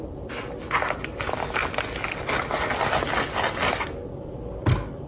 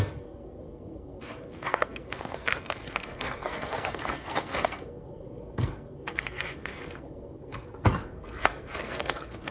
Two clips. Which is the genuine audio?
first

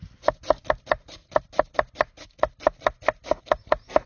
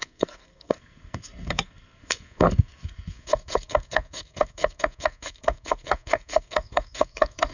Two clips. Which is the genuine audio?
first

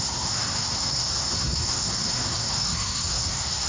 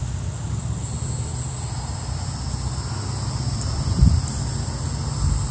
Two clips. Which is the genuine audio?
second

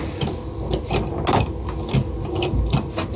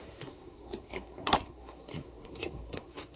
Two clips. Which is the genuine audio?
first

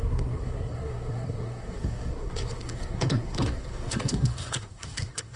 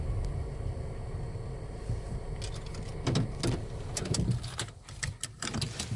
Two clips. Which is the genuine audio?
second